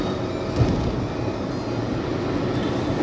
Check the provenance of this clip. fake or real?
real